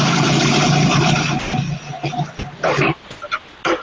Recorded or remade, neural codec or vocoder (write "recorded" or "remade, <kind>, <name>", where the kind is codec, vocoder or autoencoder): recorded